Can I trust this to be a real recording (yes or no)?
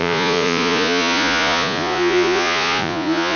no